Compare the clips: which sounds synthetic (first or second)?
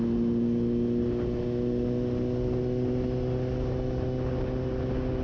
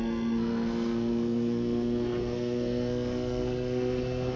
second